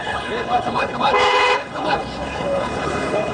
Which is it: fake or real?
fake